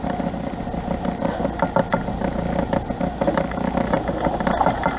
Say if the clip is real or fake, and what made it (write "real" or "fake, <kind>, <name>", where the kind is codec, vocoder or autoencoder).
real